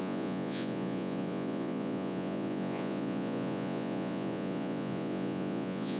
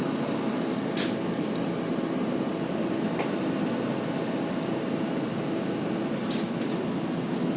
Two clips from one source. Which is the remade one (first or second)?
first